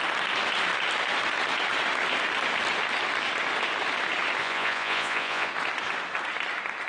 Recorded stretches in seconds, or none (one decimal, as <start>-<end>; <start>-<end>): 0.0-4.4; 5.5-6.9